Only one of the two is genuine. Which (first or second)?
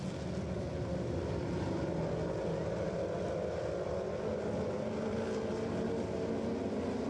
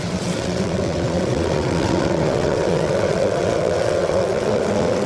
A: first